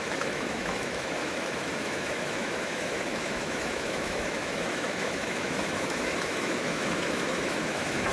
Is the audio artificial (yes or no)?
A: yes